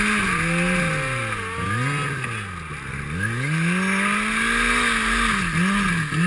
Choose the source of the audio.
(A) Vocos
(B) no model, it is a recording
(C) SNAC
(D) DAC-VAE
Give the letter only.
B